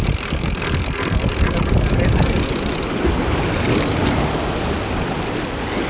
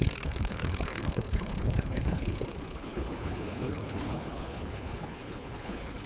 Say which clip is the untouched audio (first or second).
first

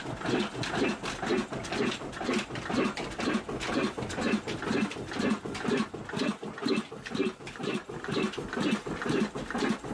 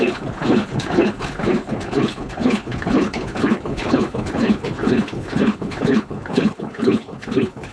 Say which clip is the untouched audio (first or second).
first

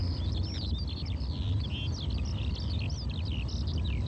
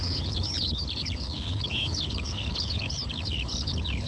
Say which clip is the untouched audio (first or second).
first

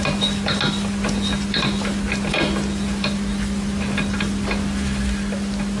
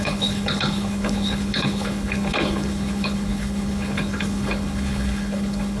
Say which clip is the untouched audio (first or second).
first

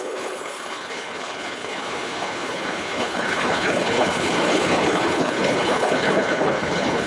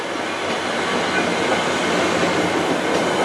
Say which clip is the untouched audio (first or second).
second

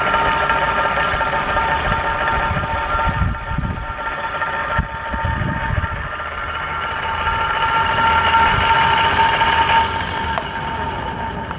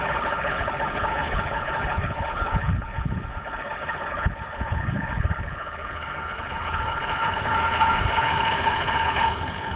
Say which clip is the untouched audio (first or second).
first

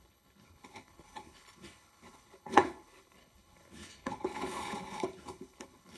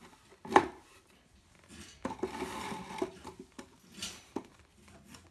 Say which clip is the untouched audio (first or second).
second